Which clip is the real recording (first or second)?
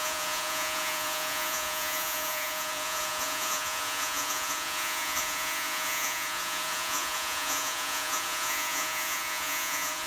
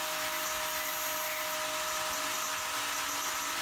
second